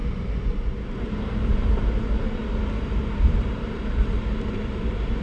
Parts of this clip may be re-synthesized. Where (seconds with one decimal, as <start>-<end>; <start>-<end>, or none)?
0.7-5.2